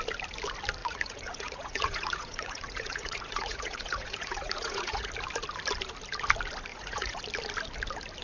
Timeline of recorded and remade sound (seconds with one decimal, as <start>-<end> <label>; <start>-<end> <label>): 0.0-0.8 recorded; 0.8-5.1 remade; 5.1-6.7 recorded; 6.7-7.2 remade; 7.2-8.2 recorded